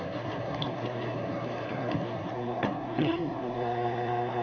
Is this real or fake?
fake